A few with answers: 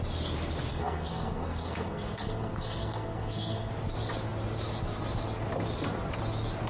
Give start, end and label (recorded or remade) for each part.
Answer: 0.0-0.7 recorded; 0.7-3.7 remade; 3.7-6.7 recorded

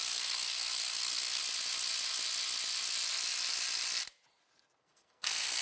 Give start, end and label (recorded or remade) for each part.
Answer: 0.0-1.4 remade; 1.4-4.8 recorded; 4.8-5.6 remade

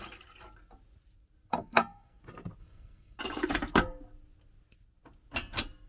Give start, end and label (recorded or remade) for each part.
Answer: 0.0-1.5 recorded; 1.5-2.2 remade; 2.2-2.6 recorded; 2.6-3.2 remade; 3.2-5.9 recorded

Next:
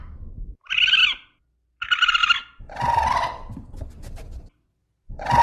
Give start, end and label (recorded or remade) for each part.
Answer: 0.0-5.4 recorded

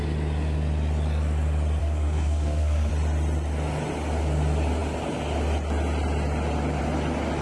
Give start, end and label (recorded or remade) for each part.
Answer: 0.0-1.8 recorded; 1.8-2.9 remade; 2.9-7.4 recorded

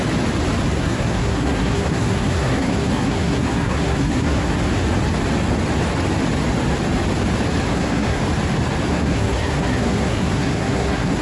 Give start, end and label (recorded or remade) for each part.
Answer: 0.0-0.8 recorded; 0.8-4.5 remade; 4.5-7.7 recorded; 7.7-8.2 remade; 8.2-8.9 recorded; 8.9-11.2 remade

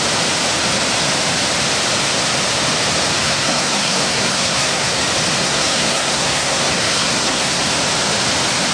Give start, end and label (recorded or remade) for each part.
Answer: 0.0-3.2 recorded; 3.2-5.0 remade; 5.0-5.4 recorded; 5.4-7.6 remade; 7.6-8.7 recorded

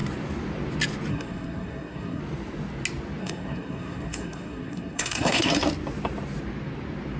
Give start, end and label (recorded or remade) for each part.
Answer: 0.0-1.1 recorded; 1.1-2.2 remade; 2.2-3.2 recorded; 3.2-5.5 remade; 5.5-7.2 recorded